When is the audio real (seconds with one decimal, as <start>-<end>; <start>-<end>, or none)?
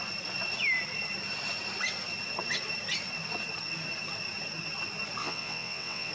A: 0.0-5.2